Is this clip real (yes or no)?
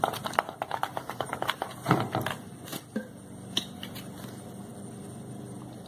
yes